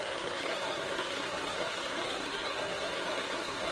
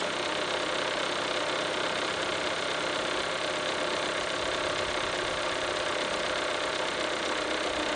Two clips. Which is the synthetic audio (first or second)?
first